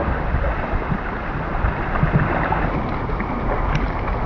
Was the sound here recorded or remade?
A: recorded